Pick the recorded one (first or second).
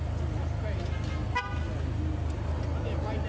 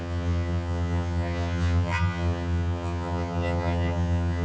first